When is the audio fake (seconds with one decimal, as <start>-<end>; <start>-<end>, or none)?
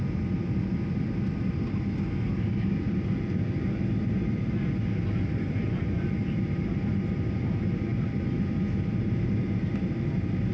none